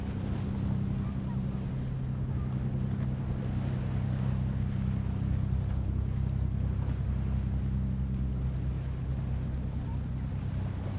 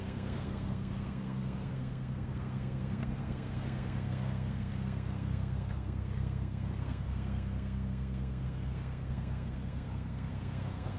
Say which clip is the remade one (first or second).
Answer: second